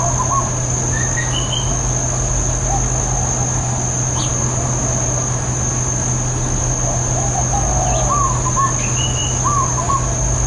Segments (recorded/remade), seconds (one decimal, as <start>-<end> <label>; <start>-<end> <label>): 0.0-10.5 recorded